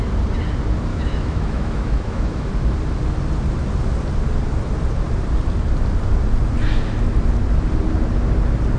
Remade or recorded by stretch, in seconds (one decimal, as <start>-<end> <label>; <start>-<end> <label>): 0.0-0.9 recorded; 0.9-2.5 remade; 2.5-8.8 recorded